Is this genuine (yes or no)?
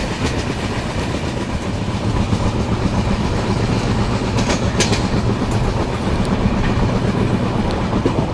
yes